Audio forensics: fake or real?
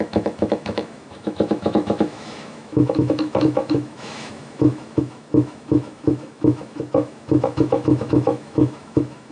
fake